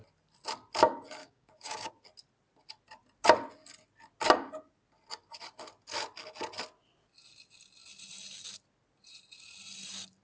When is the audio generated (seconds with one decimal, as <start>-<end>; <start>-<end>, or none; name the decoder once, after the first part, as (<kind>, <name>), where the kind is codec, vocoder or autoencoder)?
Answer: 1.2-1.9 (codec, DAC)